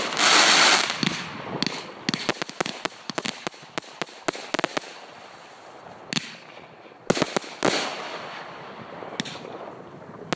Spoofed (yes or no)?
no